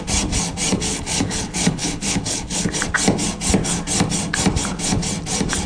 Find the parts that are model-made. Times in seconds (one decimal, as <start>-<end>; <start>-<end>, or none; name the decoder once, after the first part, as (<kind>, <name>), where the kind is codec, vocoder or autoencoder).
0.9-2.8 (codec, HILCodec)